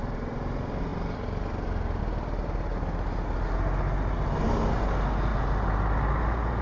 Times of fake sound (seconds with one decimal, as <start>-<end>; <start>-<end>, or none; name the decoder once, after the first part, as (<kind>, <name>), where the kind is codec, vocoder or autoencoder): none